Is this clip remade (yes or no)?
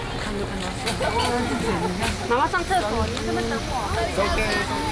no